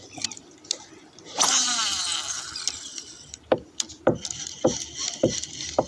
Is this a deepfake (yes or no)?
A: no